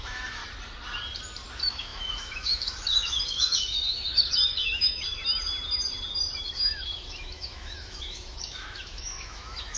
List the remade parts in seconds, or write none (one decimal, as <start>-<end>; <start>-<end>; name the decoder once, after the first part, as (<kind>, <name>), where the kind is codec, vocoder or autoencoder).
0.0-0.4 (autoencoder, DAC-VAE); 1.5-5.2; 6.4-9.8